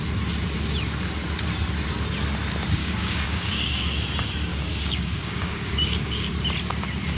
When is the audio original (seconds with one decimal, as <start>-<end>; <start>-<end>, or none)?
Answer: 0.0-2.8; 3.9-4.5; 6.3-7.2